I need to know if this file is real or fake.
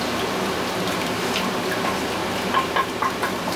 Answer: real